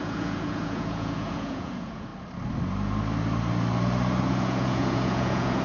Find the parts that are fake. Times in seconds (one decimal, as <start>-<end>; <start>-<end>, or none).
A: 0.0-2.1; 4.2-5.6